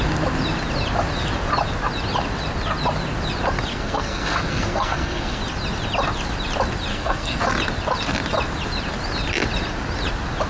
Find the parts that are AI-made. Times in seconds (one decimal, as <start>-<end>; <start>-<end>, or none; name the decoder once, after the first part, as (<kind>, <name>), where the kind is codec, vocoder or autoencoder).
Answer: 3.7-5.4 (codec, SNAC); 6.9-7.4